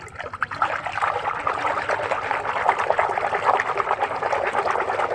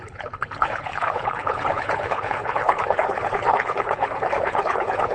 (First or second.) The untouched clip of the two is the first